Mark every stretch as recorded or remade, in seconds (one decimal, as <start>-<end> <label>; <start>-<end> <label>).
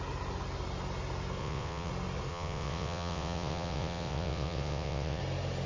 0.0-1.4 recorded; 1.4-1.9 remade; 1.9-2.3 recorded; 2.3-5.2 remade; 5.2-5.7 recorded